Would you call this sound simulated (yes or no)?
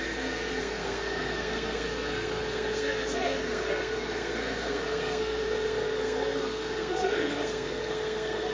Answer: yes